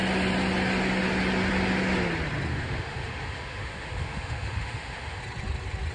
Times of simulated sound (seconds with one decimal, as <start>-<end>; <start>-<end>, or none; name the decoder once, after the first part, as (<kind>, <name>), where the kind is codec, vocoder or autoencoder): 2.5-5.2 (autoencoder, DAC-VAE)

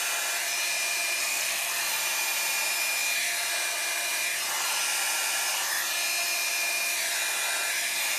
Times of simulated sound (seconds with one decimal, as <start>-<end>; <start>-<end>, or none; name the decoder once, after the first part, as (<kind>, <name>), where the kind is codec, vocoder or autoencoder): 1.2-1.8 (codec, SNAC)

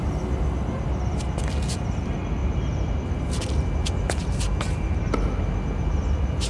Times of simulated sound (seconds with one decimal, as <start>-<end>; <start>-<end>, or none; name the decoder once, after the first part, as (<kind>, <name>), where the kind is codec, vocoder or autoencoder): 4.2-5.0 (vocoder, BigVGAN v2)

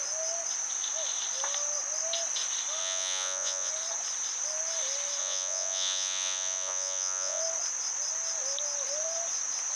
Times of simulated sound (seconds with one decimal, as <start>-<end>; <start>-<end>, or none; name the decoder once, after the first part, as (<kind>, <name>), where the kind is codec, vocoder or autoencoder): 2.8-3.7 (vocoder, Vocos); 5.2-7.4

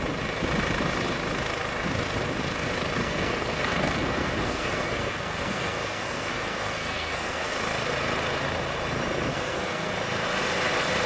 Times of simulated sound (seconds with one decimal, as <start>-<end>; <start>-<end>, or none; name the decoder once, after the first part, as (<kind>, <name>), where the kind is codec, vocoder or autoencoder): 3.0-7.5 (codec, SNAC); 9.3-9.9